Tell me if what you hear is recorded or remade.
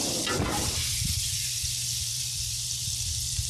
remade